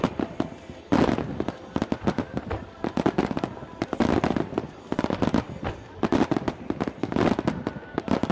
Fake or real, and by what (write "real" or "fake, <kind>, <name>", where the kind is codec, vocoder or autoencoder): fake, vocoder, BigVGAN v2